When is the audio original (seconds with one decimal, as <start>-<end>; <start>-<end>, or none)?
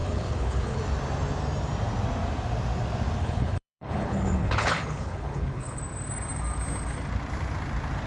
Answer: 0.8-3.2; 5.8-8.1